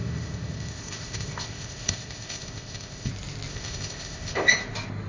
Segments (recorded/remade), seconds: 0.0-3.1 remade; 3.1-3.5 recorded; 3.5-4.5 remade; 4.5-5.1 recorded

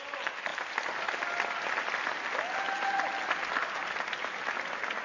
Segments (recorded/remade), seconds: 0.0-5.0 recorded

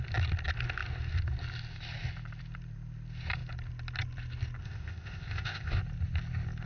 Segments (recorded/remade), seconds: 0.0-4.6 recorded; 4.6-5.8 remade; 5.8-6.7 recorded

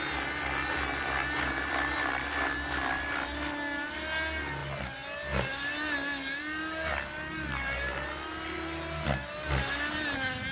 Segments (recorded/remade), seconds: 0.0-10.5 recorded

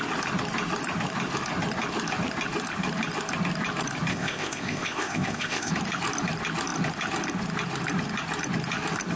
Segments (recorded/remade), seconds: 0.0-4.1 recorded; 4.1-5.7 remade; 5.7-9.2 recorded

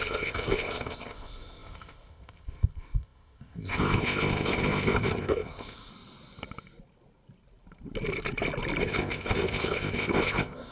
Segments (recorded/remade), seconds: 0.0-5.9 remade; 5.9-8.8 recorded; 8.8-10.7 remade

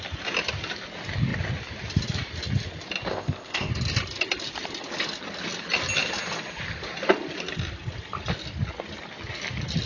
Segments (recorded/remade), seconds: 0.0-3.1 recorded; 3.1-3.7 remade; 3.7-9.9 recorded

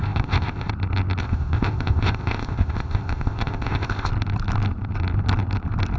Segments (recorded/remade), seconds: 0.0-0.7 remade; 0.7-1.2 recorded; 1.2-4.1 remade; 4.1-6.0 recorded